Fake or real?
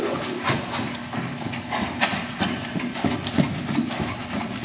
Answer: real